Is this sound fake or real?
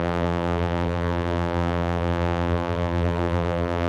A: fake